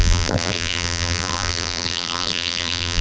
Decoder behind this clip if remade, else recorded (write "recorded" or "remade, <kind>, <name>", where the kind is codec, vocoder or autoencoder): remade, vocoder, BigVGAN v2